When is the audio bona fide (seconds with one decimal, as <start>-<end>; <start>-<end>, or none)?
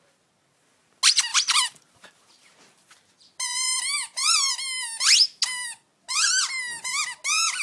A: 0.0-1.3; 4.5-5.9; 6.5-7.6